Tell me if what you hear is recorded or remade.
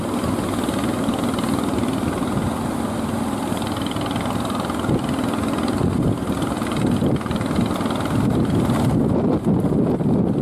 recorded